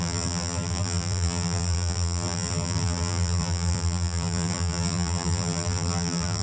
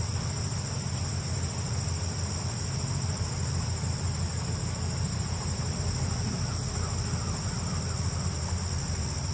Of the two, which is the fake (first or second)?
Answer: first